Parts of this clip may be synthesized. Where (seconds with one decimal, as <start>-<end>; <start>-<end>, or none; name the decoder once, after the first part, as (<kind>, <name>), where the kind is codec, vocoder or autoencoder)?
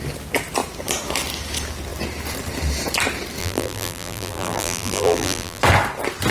3.4-5.6 (vocoder, BigVGAN v2)